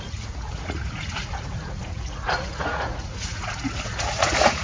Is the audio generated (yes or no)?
yes